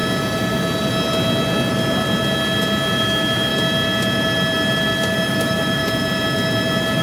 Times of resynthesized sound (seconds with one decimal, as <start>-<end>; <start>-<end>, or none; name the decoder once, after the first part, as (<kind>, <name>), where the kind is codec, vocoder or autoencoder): 3.0-3.5 (autoencoder, DAC-VAE); 5.3-5.8